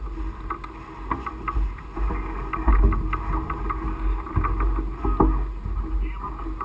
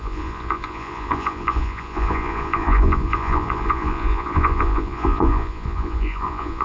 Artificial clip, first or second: second